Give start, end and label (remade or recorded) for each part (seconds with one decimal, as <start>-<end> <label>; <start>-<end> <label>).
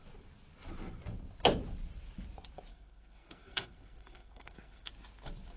0.0-2.7 recorded; 2.7-4.9 remade; 4.9-5.6 recorded